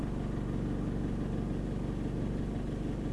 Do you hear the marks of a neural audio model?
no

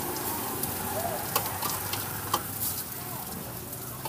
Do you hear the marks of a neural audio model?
no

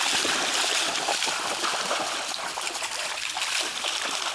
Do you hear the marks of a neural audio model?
no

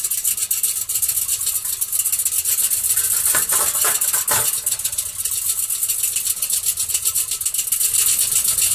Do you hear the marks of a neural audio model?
no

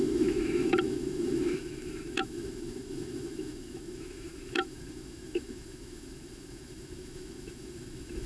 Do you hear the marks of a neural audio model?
yes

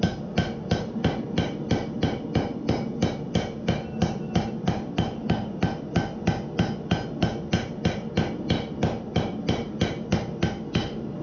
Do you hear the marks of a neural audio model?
no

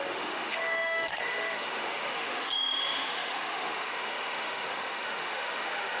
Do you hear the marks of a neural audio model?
yes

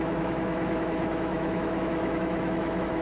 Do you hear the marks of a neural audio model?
yes